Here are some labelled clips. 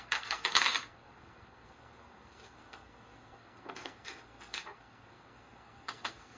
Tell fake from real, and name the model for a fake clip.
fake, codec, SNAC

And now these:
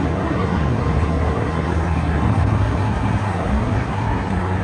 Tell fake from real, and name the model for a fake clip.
fake, codec, SNAC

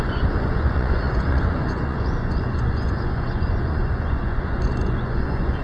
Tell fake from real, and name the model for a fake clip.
fake, vocoder, Vocos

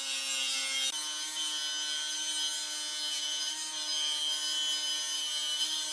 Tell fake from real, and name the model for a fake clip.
real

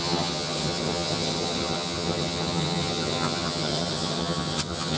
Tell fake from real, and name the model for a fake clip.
fake, vocoder, HiFi-GAN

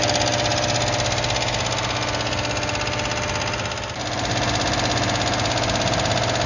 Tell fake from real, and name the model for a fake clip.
real